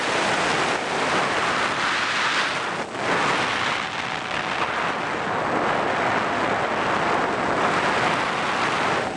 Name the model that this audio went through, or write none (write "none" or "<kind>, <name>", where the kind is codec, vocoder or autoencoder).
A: none